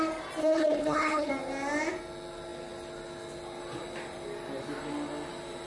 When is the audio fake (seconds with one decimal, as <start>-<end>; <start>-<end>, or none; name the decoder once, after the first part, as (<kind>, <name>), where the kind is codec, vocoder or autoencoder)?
0.4-1.3 (codec, HILCodec)